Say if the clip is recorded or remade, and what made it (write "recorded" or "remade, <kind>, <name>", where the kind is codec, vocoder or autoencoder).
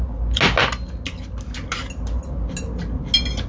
recorded